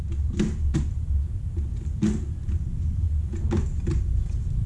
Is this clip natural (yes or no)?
yes